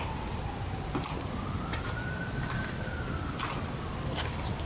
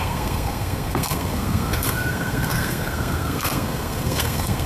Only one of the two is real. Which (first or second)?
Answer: first